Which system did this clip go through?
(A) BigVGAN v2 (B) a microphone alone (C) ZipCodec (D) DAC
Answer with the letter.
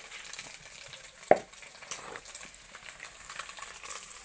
B